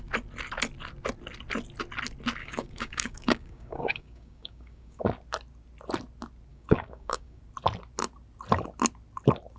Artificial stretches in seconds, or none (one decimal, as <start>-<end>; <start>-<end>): 2.4-5.0; 6.5-7.4